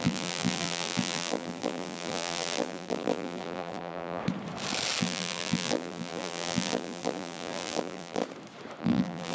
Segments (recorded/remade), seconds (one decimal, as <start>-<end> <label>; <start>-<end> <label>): 0.0-4.2 remade; 4.2-5.0 recorded; 5.0-8.2 remade; 8.2-8.8 recorded; 8.8-9.3 remade